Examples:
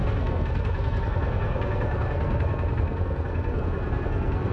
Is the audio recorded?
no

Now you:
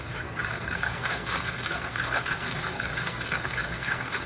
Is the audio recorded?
no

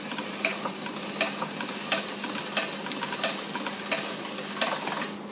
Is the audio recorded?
yes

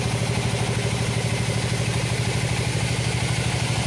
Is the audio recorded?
yes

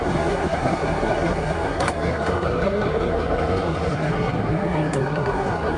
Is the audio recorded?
no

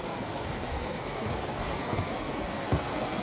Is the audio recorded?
no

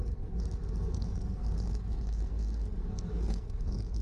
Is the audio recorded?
no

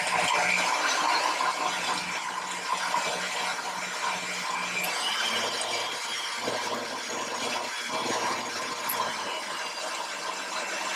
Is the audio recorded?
yes